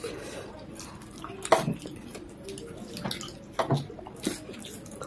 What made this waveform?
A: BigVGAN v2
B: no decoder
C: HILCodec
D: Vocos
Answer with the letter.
B